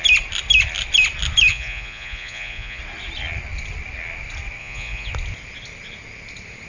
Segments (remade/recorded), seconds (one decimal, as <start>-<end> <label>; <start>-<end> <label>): 0.0-1.5 recorded; 1.5-2.8 remade; 2.8-4.6 recorded; 4.6-5.1 remade; 5.1-6.7 recorded